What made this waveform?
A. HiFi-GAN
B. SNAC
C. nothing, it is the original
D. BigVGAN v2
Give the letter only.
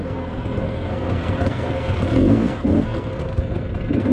B